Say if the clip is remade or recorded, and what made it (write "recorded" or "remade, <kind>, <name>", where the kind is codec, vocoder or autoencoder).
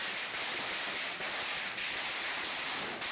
recorded